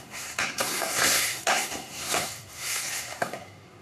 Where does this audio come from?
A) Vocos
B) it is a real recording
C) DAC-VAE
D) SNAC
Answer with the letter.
D